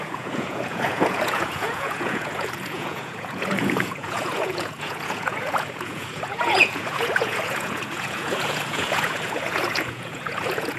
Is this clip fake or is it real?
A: fake